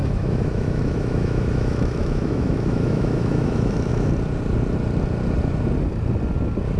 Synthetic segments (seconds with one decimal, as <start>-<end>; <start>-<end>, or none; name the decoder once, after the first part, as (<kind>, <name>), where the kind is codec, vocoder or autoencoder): 0.0-4.1 (autoencoder, DAC-VAE)